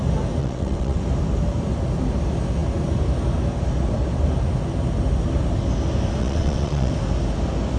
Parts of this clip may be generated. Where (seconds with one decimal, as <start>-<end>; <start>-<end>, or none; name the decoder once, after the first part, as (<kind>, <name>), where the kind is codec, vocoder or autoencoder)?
0.4-1.0 (vocoder, WaveNeXt); 6.2-6.9

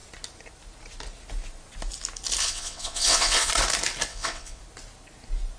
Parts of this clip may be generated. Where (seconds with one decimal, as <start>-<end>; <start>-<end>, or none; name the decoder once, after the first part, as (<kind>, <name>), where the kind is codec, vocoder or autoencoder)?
2.4-3.5 (vocoder, WaveNeXt); 4.1-4.6

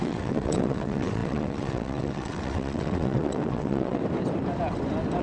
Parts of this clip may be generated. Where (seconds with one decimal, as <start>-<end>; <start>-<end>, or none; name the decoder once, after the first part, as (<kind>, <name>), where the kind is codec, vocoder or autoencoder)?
0.0-4.0 (vocoder, WaveNeXt)

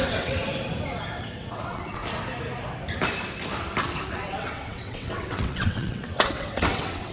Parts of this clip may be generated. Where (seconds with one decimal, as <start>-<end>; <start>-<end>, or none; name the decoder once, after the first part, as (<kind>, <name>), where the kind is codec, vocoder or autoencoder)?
0.0-0.4 (vocoder, WaveNeXt); 1.4-2.0; 4.1-7.1

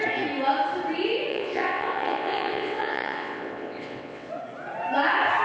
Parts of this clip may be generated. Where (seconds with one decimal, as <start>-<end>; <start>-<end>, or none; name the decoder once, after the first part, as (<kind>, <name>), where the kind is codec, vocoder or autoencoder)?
1.3-4.3 (vocoder, WaveNeXt)

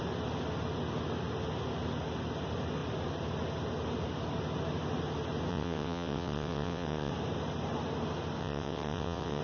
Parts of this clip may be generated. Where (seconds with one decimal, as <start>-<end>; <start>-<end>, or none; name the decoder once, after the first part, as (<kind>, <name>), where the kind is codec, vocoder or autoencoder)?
5.5-7.1 (vocoder, WaveNeXt); 8.4-9.4